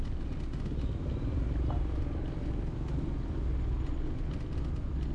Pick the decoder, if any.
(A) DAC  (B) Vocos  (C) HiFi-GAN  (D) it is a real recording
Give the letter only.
D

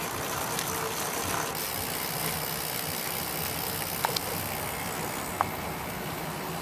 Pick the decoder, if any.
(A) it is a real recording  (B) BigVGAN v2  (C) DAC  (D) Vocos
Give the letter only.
A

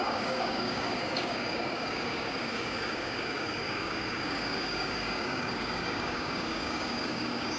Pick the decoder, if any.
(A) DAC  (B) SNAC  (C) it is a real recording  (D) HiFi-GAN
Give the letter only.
A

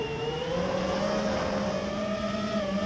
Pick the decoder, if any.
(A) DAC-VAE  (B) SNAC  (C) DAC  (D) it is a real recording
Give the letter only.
D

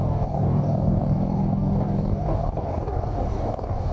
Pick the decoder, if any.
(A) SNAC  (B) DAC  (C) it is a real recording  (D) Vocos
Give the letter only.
B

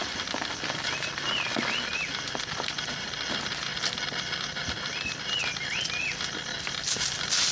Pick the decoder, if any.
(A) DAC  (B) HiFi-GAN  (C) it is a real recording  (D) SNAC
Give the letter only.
C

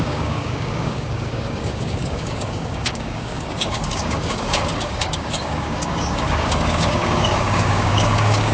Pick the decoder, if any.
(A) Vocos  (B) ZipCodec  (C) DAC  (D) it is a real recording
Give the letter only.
C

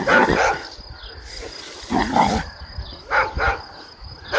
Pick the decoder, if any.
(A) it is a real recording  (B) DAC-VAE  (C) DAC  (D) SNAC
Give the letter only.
A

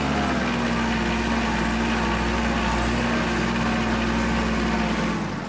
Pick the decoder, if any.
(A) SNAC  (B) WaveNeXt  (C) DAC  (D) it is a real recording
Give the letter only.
D